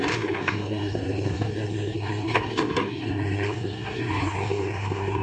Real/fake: fake